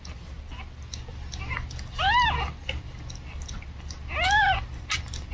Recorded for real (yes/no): yes